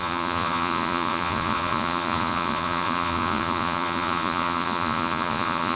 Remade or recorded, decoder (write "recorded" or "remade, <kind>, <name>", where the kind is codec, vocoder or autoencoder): remade, vocoder, Vocos